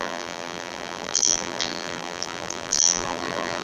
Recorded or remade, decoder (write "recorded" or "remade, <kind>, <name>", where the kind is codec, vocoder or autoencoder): remade, vocoder, BigVGAN v2